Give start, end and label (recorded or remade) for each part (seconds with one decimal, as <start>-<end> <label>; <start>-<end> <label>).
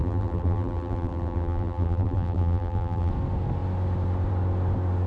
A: 0.0-3.1 remade; 3.1-5.1 recorded